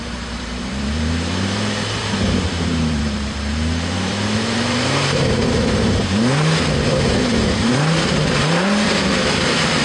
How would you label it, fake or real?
fake